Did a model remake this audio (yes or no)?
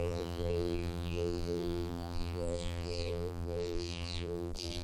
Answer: yes